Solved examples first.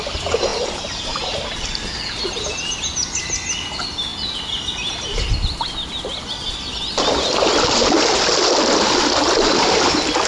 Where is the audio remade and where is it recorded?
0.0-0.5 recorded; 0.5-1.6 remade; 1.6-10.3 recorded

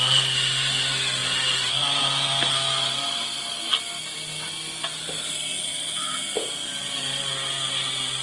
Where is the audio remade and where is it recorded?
0.0-8.2 recorded

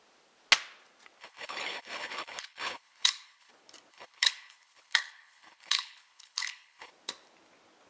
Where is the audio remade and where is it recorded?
0.0-1.2 recorded; 1.2-3.5 remade; 3.5-3.9 recorded; 3.9-6.9 remade; 6.9-7.9 recorded